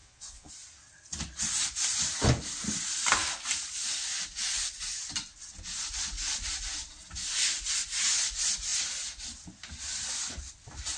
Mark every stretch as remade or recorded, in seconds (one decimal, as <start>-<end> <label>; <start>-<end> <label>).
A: 0.0-0.5 remade; 0.5-11.0 recorded

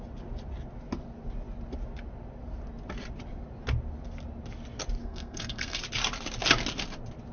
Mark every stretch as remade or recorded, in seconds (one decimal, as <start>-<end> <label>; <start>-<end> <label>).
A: 0.0-5.0 recorded; 5.0-5.8 remade; 5.8-7.3 recorded

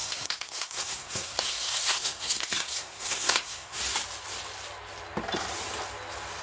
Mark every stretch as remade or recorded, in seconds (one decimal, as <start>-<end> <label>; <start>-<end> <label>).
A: 0.0-3.8 remade; 3.8-6.4 recorded

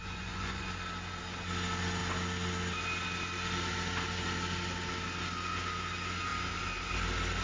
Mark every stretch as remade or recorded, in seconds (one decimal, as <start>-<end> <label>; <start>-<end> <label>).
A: 0.0-0.7 remade; 0.7-7.4 recorded

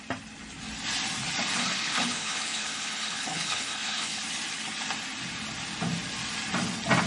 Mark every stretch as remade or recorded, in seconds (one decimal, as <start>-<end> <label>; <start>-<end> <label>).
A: 0.0-1.6 recorded; 1.6-4.2 remade; 4.2-7.1 recorded

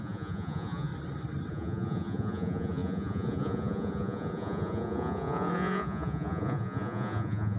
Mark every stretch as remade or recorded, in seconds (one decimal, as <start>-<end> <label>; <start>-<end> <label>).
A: 0.0-0.9 remade; 0.9-1.5 recorded; 1.5-7.6 remade

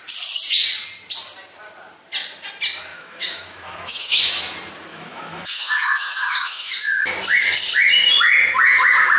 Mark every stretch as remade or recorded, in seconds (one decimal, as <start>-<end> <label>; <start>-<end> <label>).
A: 0.0-2.9 recorded; 2.9-4.3 remade; 4.3-4.9 recorded; 4.9-6.7 remade; 6.7-9.2 recorded